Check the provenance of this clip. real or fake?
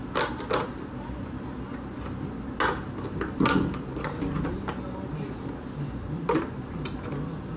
real